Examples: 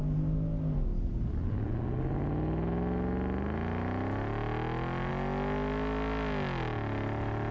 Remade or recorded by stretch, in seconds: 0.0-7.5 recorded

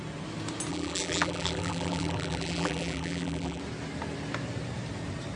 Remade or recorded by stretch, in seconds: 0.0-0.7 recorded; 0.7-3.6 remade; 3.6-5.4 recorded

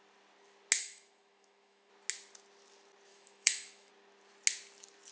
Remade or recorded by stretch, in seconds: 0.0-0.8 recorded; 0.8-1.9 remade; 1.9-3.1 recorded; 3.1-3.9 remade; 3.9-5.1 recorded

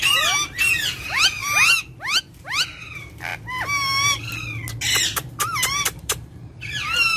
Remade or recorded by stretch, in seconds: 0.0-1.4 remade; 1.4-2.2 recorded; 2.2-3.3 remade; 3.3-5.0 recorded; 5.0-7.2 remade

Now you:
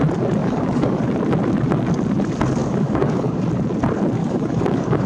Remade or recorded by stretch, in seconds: 0.0-0.4 recorded; 0.4-1.0 remade; 1.0-2.6 recorded; 2.6-3.4 remade; 3.4-4.2 recorded; 4.2-5.1 remade

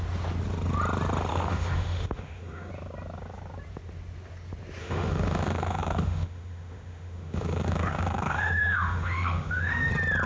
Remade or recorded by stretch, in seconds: 0.0-1.3 recorded; 1.3-2.7 remade; 2.7-4.8 recorded; 4.8-9.9 remade; 9.9-10.3 recorded